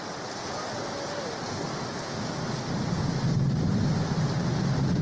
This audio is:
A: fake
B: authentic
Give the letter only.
B